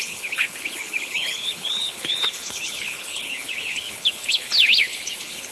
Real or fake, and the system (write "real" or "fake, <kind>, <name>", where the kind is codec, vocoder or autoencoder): fake, codec, HILCodec